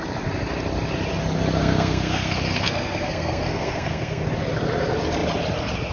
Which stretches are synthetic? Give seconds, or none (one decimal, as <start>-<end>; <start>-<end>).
1.6-4.2